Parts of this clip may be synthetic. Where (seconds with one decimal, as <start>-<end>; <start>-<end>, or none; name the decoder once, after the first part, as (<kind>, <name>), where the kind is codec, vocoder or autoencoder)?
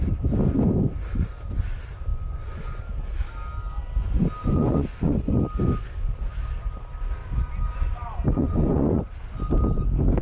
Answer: 2.1-2.8 (vocoder, Vocos); 4.4-5.4; 8.3-9.0